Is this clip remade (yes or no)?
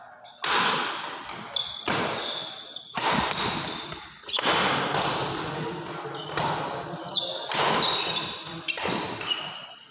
no